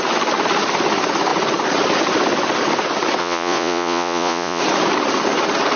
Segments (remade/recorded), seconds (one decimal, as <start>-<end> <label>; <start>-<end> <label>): 0.0-3.2 recorded; 3.2-4.6 remade; 4.6-5.8 recorded

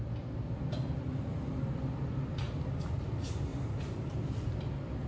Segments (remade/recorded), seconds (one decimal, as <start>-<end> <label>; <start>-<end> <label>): 0.0-5.1 recorded

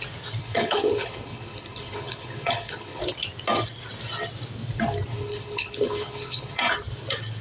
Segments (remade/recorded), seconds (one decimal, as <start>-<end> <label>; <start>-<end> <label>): 0.0-0.4 recorded; 0.4-3.0 remade; 3.0-5.1 recorded; 5.1-6.6 remade; 6.6-7.4 recorded

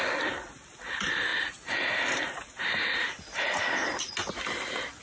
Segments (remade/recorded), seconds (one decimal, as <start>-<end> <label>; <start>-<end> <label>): 0.0-5.0 recorded

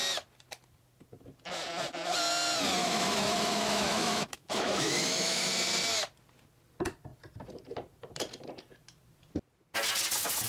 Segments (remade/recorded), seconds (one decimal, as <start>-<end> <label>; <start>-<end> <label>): 0.0-2.8 recorded; 2.8-5.5 remade; 5.5-10.5 recorded